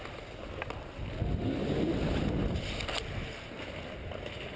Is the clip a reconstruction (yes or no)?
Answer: no